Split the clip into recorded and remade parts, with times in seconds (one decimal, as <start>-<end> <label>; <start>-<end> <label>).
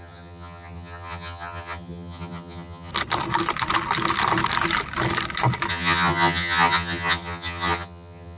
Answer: 0.0-2.9 remade; 2.9-5.7 recorded; 5.7-8.4 remade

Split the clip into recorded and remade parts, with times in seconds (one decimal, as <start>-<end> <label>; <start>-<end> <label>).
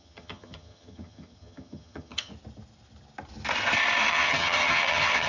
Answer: 0.0-2.3 remade; 2.3-4.1 recorded; 4.1-5.3 remade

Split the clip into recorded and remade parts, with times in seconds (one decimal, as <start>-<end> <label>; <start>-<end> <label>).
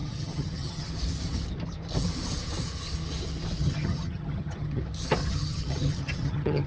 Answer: 0.0-0.9 remade; 0.9-3.6 recorded; 3.6-4.8 remade; 4.8-5.2 recorded; 5.2-6.7 remade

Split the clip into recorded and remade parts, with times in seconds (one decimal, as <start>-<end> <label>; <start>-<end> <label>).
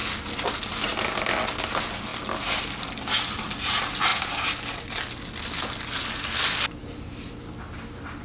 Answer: 0.0-8.2 recorded